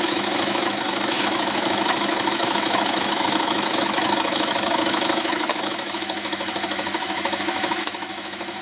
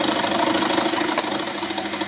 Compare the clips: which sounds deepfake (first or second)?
first